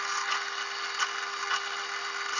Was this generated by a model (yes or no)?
no